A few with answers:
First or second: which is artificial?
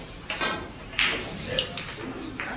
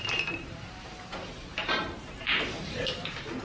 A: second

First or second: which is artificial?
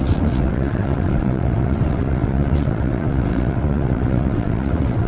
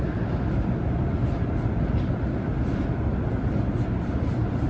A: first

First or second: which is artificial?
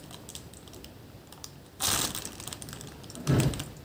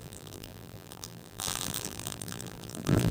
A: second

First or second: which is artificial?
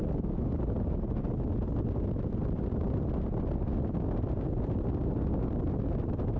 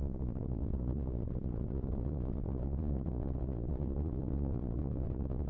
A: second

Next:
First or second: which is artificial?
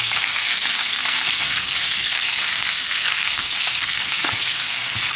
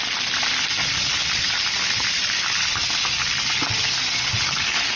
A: first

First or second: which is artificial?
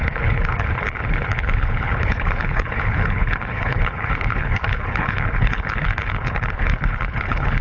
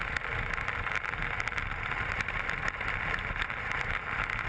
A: first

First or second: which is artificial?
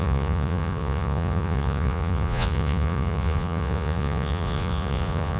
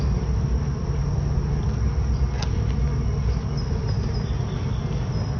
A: first